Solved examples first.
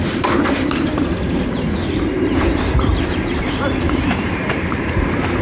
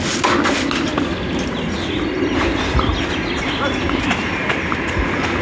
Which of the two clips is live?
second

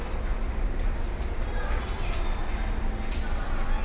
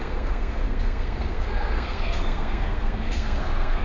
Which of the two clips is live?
first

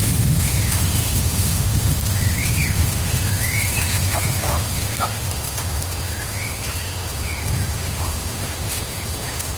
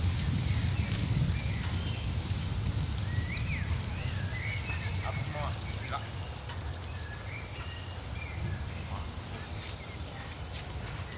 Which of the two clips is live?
second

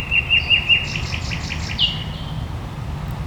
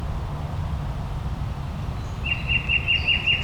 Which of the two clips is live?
first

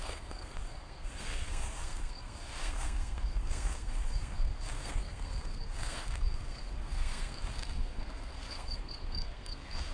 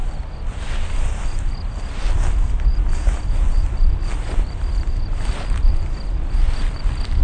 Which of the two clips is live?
second